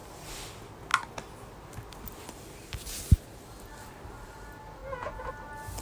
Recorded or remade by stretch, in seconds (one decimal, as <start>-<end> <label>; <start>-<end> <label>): 0.0-4.8 recorded; 4.8-5.3 remade; 5.3-5.8 recorded